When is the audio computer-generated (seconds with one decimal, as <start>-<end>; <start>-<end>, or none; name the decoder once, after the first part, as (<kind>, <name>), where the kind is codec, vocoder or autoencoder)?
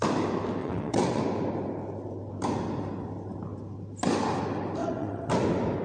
0.6-1.2 (vocoder, WaveNeXt); 4.8-5.3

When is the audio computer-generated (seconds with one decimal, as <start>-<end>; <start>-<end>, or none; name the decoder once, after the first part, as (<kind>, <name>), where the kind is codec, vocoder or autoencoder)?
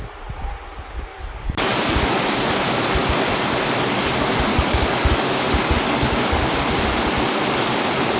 1.1-1.8 (codec, DAC); 4.5-6.5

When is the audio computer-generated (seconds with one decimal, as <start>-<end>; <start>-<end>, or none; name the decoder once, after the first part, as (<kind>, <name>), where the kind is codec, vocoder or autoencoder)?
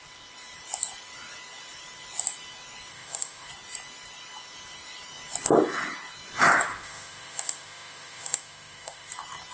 2.9-3.5 (autoencoder, DAC-VAE); 6.7-9.1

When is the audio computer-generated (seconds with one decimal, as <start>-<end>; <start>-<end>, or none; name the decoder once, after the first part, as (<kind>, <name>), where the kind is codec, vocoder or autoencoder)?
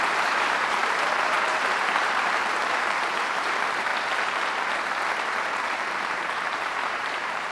0.0-3.9 (vocoder, BigVGAN v2); 5.5-7.5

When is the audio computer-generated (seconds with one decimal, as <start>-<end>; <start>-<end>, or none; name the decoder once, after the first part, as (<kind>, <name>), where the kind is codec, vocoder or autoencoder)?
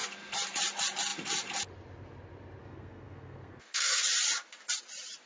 2.6-4.0 (codec, SNAC)